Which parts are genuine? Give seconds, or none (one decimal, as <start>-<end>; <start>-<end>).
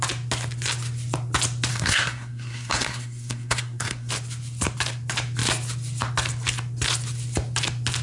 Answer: 0.0-1.7; 4.1-8.0